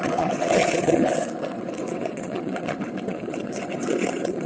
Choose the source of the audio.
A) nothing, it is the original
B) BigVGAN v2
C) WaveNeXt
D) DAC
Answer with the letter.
C